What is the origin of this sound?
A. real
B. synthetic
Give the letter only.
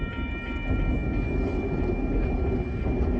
B